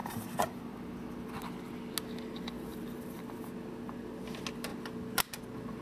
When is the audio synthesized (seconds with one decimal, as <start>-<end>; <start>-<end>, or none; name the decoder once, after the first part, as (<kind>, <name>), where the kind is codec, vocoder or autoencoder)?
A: 0.0-0.6 (vocoder, BigVGAN v2); 2.7-3.2

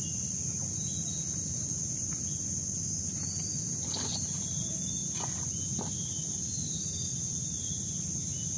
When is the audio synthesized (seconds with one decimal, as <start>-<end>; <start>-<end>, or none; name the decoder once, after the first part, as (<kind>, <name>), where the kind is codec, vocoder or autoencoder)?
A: none